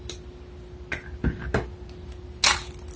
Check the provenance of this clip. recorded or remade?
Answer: recorded